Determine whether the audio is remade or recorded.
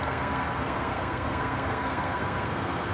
remade